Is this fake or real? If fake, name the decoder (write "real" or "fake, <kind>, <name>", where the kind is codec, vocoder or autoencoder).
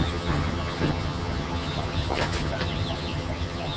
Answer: fake, vocoder, HiFi-GAN